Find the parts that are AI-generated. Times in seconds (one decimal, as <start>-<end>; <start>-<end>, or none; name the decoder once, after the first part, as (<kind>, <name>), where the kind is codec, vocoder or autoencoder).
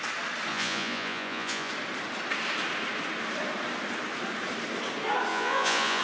0.5-1.7 (vocoder, Vocos); 5.3-6.0